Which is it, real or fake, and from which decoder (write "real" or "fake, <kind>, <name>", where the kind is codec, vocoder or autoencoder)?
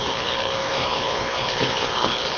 fake, codec, HILCodec